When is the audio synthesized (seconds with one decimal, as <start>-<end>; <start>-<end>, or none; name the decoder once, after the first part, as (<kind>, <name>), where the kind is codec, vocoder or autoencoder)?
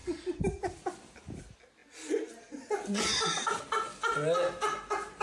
none